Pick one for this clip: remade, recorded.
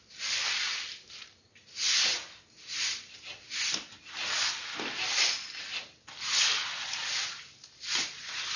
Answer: recorded